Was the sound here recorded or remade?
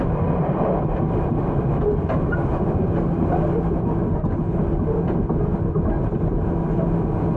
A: recorded